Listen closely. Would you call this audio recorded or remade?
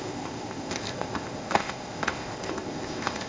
remade